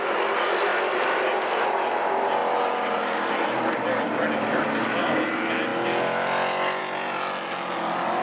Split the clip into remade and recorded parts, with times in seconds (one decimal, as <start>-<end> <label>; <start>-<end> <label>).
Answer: 0.0-0.7 recorded; 0.7-1.9 remade; 1.9-2.4 recorded; 2.4-3.3 remade; 3.3-8.2 recorded